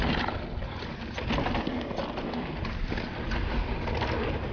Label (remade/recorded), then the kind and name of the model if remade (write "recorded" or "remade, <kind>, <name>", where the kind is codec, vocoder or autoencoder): recorded